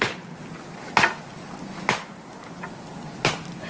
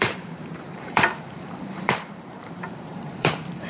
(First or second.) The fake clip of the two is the second